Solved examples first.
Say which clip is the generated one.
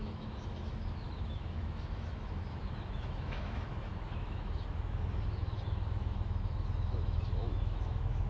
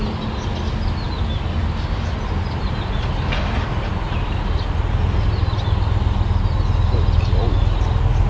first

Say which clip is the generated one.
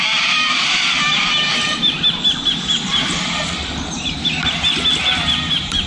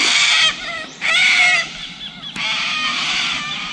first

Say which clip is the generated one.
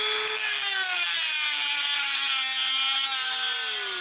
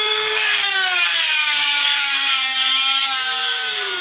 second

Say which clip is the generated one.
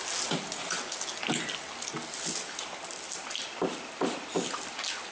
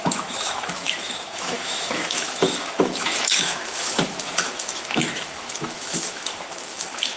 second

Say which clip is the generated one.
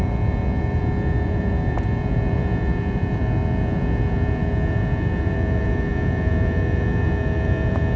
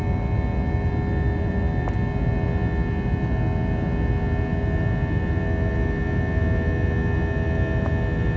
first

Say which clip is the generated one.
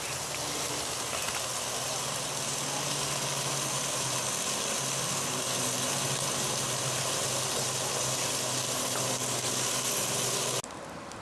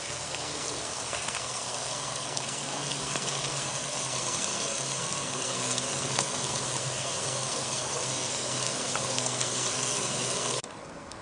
second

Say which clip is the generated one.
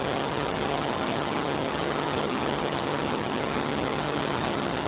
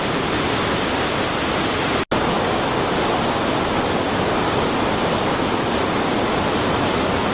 first